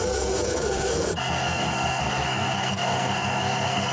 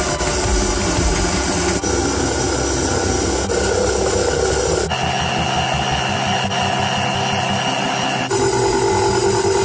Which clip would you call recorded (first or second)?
second